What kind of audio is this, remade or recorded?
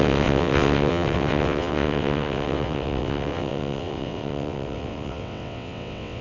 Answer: remade